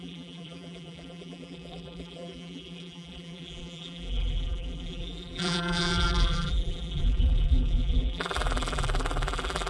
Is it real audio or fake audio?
fake